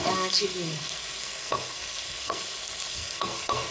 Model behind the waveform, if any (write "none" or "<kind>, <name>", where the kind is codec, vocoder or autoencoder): codec, SNAC